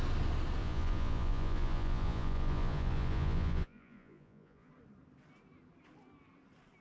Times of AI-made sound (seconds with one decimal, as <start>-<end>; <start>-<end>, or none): 0.6-4.7